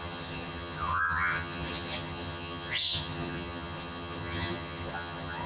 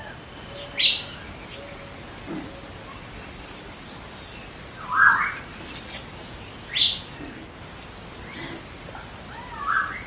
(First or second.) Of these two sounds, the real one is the second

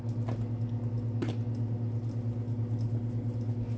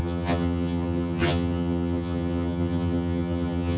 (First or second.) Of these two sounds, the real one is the first